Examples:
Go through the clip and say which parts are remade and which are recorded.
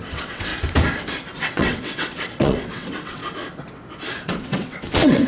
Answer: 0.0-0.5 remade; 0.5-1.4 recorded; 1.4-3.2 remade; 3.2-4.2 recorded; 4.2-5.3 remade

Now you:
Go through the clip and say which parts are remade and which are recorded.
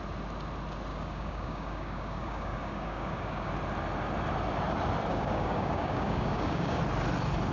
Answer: 0.0-0.9 recorded; 0.9-3.5 remade; 3.5-5.1 recorded; 5.1-6.8 remade; 6.8-7.5 recorded